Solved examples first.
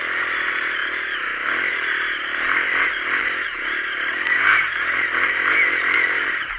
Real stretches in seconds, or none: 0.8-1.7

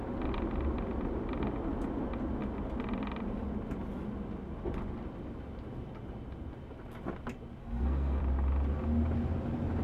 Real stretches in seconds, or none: 0.0-7.6; 8.2-9.8

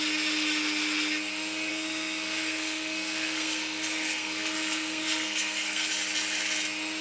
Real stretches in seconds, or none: 0.0-1.7; 5.9-7.0